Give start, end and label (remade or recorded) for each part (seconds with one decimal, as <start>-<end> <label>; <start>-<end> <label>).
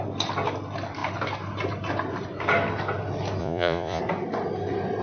0.0-3.4 recorded; 3.4-4.0 remade; 4.0-5.0 recorded